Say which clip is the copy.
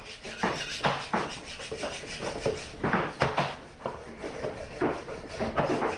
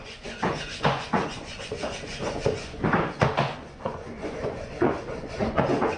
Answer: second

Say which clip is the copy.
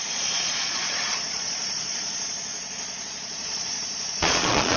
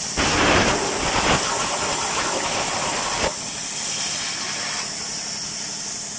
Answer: first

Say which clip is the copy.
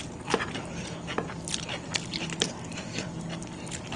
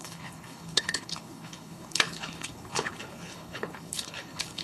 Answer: second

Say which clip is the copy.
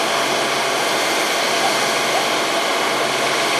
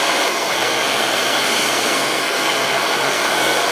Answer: second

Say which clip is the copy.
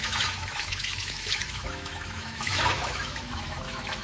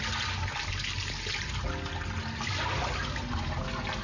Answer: first